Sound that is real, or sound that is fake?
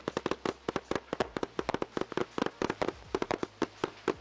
real